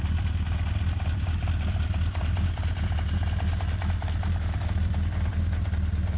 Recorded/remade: recorded